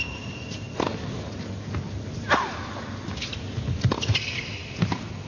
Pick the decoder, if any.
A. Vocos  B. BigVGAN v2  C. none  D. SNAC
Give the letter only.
C